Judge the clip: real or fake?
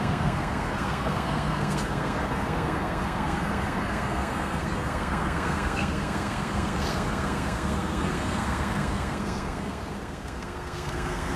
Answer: fake